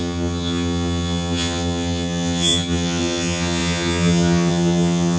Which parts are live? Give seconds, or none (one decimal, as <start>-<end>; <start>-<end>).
none